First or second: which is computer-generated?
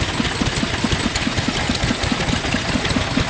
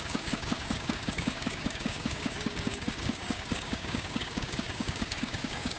second